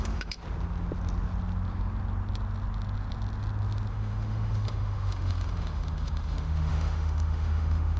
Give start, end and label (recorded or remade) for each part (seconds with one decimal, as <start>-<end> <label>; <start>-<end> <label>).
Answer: 0.0-0.4 remade; 0.4-3.9 recorded; 3.9-8.0 remade